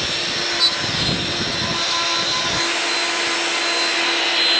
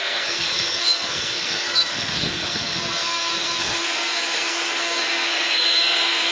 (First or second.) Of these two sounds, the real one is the first